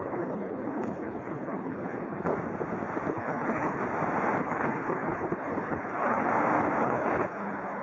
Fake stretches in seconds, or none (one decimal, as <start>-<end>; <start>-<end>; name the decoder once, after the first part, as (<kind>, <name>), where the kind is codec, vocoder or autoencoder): 0.0-2.3 (codec, HILCodec); 3.1-3.8; 4.4-6.3; 6.8-7.8